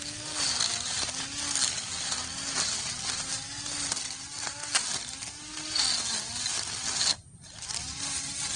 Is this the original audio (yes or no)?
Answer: yes